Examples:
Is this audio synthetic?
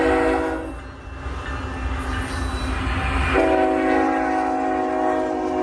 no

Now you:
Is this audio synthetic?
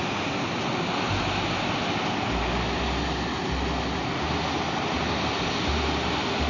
no